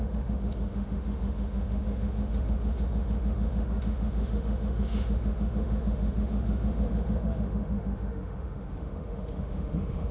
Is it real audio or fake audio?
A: fake